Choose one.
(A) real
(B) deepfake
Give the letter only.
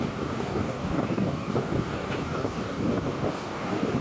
B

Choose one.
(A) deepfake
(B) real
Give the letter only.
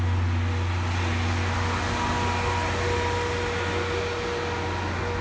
B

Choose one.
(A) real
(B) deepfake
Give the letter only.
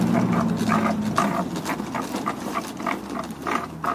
A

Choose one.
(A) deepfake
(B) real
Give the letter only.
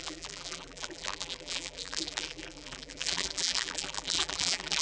A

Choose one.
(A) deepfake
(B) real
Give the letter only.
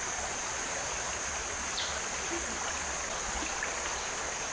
B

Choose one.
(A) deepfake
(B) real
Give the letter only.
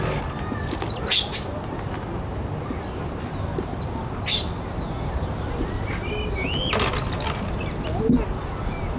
B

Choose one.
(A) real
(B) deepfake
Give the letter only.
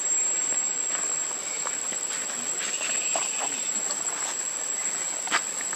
A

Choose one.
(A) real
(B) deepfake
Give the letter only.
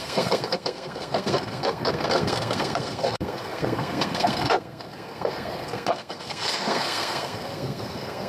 B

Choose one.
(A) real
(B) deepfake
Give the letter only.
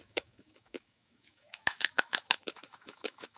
B